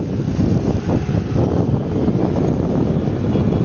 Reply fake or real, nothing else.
real